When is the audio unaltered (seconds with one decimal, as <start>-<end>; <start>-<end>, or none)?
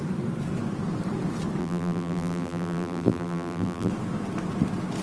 0.0-1.6; 3.9-5.0